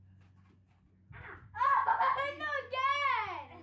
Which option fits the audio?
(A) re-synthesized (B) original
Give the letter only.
B